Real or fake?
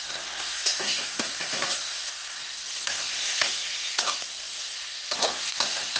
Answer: fake